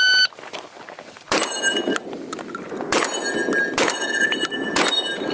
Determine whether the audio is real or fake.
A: real